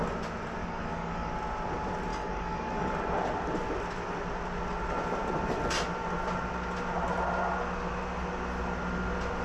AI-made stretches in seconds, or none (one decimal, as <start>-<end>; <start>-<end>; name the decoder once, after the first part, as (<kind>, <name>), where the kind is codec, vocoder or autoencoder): 0.6-1.3 (codec, DAC); 2.1-2.9